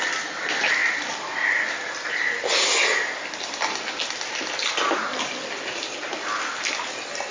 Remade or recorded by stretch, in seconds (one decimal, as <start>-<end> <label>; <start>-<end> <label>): 0.0-7.3 recorded